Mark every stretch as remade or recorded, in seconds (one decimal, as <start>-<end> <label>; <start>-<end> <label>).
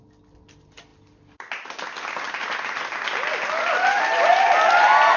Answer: 0.0-5.2 recorded